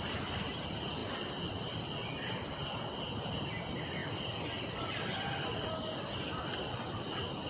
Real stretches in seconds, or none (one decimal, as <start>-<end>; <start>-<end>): 0.0-7.5